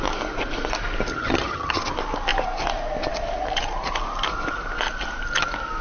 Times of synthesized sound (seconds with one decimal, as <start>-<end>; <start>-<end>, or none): 1.1-1.8